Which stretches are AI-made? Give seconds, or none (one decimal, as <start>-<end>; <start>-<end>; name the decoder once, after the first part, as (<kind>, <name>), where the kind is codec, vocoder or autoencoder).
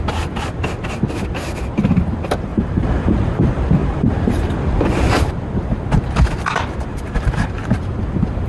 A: 2.5-3.1 (vocoder, BigVGAN v2); 3.8-4.6; 6.9-7.6